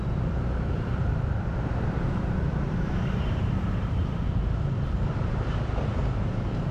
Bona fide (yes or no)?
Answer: no